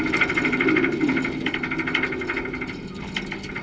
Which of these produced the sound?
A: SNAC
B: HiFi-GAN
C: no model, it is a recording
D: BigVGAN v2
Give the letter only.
C